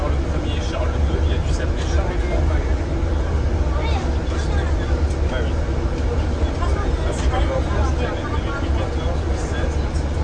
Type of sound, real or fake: real